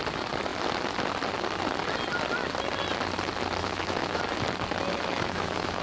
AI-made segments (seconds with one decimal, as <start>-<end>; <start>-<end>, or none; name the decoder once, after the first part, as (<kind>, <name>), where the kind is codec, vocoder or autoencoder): 3.6-4.2 (autoencoder, DAC-VAE); 4.9-5.8